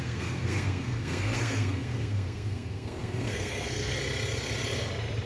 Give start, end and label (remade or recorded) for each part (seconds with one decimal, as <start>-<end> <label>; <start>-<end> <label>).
0.0-4.0 remade; 4.0-5.3 recorded